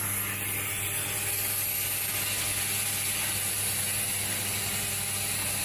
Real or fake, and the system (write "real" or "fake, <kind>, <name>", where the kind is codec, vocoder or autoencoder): real